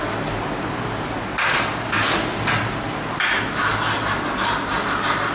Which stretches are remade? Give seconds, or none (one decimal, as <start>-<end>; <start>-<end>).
none